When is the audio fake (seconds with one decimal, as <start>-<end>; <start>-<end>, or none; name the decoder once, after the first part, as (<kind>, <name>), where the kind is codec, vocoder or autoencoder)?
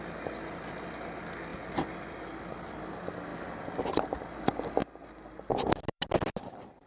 none